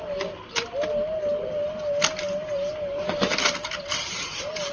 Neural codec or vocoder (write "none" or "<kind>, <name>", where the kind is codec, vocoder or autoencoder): vocoder, BigVGAN v2